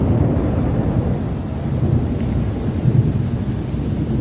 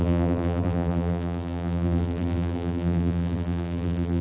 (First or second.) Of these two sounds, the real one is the first